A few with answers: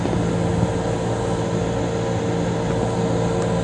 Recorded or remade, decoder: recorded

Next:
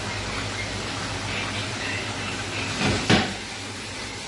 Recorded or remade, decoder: recorded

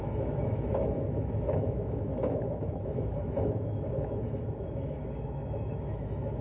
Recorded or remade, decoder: remade, autoencoder, DAC-VAE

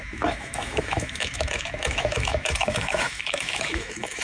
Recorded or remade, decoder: remade, autoencoder, DAC-VAE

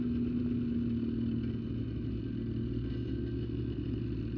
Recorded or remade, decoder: recorded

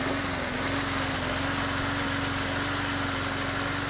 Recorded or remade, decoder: recorded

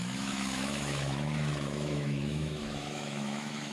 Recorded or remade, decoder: remade, autoencoder, DAC-VAE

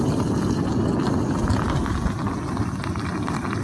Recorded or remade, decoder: recorded